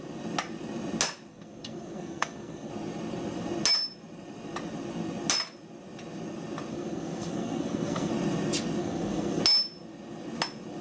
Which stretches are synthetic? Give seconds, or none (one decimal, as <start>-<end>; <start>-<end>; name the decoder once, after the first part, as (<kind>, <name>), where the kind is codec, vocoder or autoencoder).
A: 1.3-2.7 (codec, SNAC); 6.7-8.1; 8.8-9.4